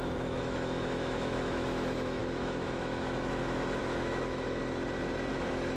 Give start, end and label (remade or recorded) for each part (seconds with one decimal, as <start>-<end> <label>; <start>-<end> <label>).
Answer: 0.0-4.6 remade; 4.6-5.3 recorded; 5.3-5.8 remade